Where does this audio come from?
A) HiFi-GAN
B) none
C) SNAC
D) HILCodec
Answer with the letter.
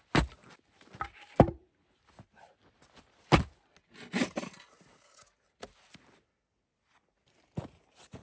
B